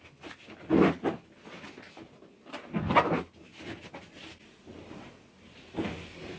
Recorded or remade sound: recorded